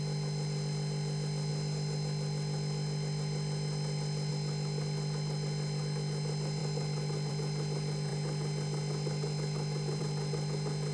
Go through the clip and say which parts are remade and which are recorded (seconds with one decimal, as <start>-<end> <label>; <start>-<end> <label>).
0.0-10.9 recorded